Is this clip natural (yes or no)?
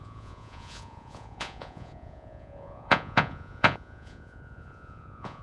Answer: no